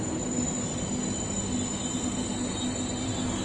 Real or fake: real